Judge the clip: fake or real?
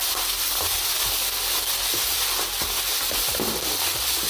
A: real